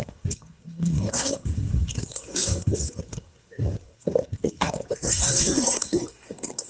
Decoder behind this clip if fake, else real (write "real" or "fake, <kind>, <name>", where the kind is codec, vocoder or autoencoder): fake, codec, SNAC